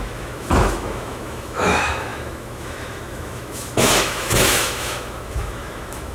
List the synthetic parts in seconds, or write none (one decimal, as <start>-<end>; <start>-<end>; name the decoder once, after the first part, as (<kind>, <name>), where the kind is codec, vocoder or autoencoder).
0.0-6.1 (autoencoder, DAC-VAE)